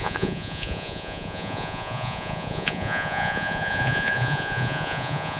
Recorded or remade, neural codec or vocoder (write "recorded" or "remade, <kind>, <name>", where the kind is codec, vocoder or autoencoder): remade, vocoder, Vocos